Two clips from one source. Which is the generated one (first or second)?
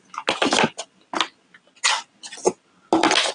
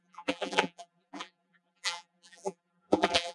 second